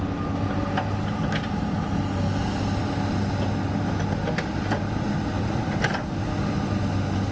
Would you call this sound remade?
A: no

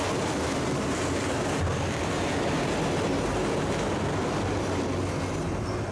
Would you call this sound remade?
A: no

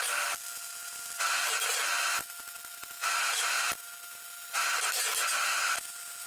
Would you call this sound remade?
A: no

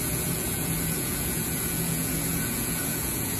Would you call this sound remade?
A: yes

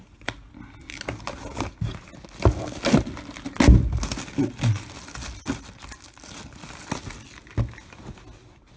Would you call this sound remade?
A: no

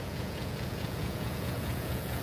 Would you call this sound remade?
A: yes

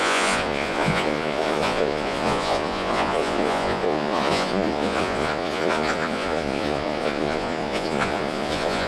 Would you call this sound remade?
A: yes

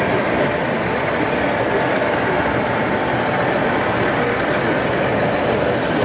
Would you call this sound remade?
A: no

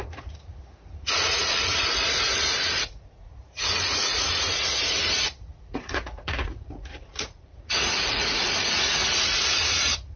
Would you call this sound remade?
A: yes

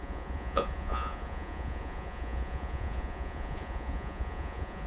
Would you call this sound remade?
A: yes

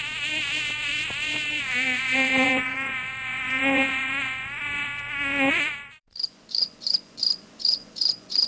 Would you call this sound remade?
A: yes